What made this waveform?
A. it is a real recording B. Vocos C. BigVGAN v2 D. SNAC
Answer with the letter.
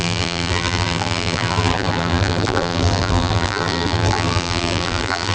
C